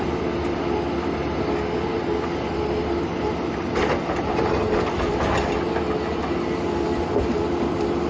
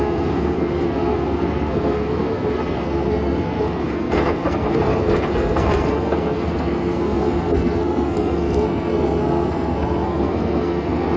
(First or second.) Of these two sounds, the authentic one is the first